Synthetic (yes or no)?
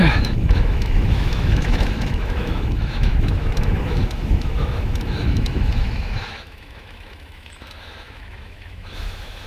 yes